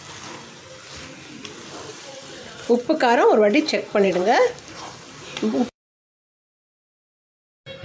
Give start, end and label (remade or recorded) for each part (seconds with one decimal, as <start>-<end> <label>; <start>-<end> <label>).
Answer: 0.0-1.9 recorded; 1.9-6.6 remade; 6.6-7.8 recorded